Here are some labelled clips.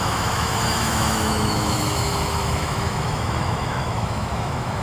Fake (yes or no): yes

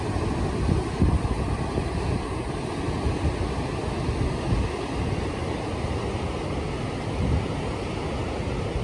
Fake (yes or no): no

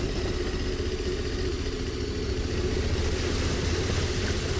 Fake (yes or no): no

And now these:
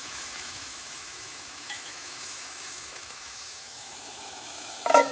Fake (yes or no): yes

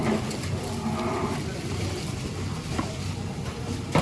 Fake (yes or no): no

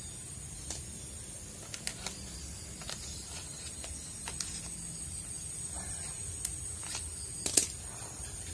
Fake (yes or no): no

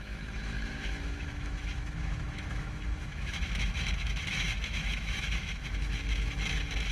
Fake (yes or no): yes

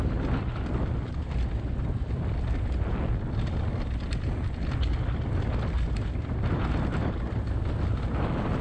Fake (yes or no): no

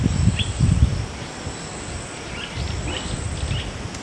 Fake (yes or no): no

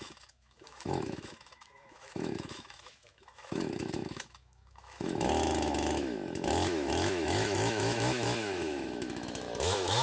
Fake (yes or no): yes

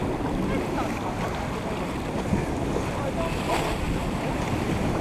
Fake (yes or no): no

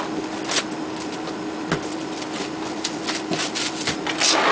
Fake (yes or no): no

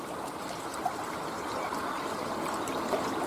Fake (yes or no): no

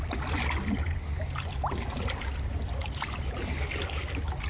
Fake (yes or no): no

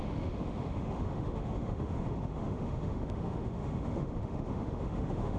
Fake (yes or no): yes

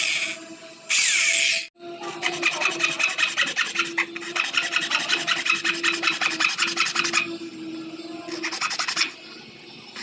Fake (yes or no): no